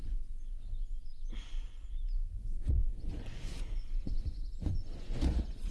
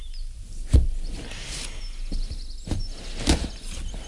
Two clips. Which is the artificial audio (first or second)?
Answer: first